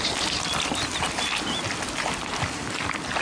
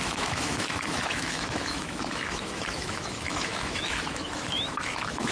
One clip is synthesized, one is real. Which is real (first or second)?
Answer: first